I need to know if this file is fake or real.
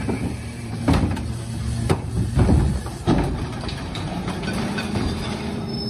fake